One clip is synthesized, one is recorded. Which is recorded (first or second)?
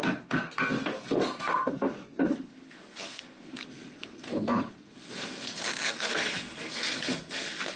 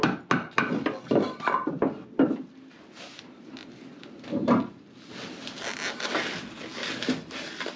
second